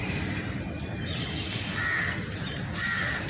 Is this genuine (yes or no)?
yes